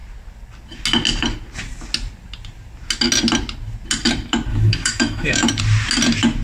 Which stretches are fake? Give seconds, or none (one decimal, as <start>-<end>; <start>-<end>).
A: 4.5-5.6